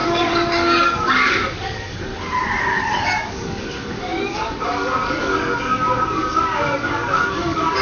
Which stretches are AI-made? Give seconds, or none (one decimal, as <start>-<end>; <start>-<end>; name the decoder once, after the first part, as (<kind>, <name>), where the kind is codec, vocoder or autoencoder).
0.0-2.1 (codec, DAC); 2.6-7.8